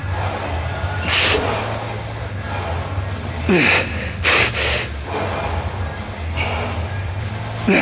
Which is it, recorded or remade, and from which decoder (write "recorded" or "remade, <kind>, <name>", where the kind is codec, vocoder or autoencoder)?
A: recorded